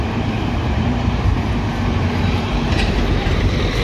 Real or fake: fake